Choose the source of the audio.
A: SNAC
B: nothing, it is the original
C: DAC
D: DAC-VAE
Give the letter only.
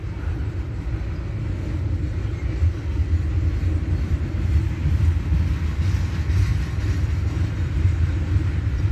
B